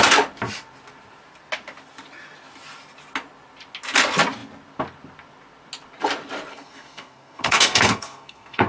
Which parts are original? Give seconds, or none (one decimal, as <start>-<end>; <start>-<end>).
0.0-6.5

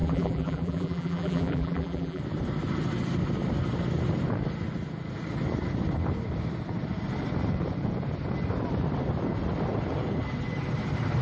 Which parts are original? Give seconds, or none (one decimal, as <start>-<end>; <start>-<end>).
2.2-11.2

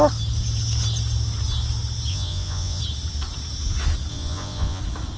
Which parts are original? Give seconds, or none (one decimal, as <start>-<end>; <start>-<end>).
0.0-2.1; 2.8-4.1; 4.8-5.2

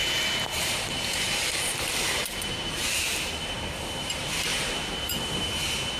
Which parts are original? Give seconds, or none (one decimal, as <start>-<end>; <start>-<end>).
3.3-4.5; 5.5-6.0

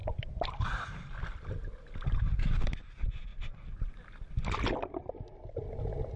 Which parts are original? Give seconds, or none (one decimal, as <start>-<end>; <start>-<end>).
0.0-6.2

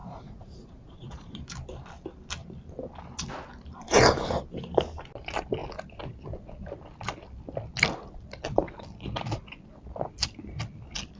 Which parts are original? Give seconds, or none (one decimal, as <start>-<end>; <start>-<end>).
1.4-11.2

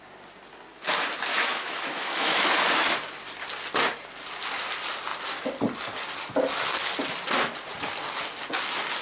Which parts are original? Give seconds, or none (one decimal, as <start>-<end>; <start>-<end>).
0.0-1.3; 2.5-9.0